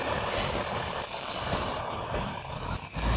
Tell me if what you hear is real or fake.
real